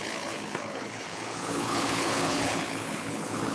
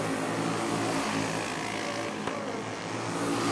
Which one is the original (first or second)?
second